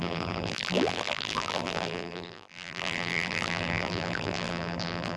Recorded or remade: remade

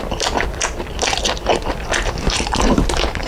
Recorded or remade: remade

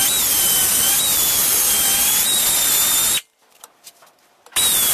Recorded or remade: recorded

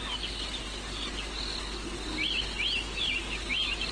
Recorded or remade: recorded